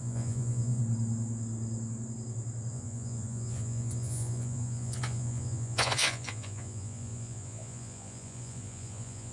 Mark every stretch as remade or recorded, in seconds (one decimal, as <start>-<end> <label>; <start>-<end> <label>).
0.0-0.8 remade; 0.8-2.7 recorded; 2.7-9.3 remade